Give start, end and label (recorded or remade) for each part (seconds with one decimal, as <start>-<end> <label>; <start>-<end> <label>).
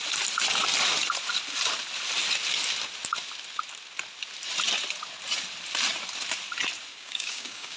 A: 0.0-6.9 recorded; 6.9-7.8 remade